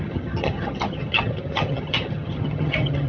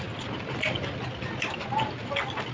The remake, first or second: first